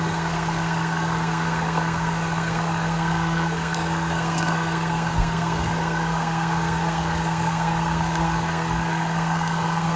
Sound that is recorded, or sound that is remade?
remade